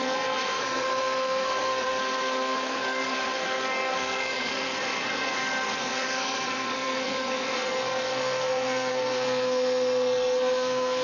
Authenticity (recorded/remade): remade